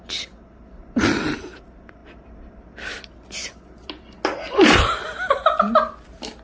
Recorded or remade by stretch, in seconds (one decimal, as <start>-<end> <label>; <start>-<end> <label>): 0.0-6.4 recorded